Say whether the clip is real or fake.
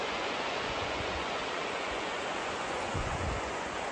fake